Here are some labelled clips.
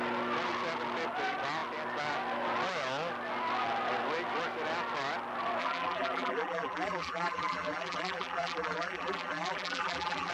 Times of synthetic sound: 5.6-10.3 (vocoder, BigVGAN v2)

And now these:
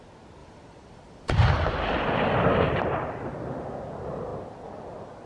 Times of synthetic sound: 0.4-2.9 (vocoder, BigVGAN v2)

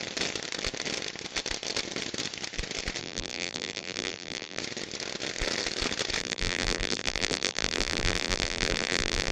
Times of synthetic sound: 3.0-4.6 (vocoder, BigVGAN v2); 6.2-9.3